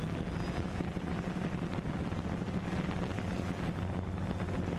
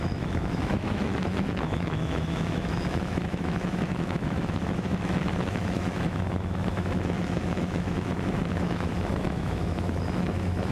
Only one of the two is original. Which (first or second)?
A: first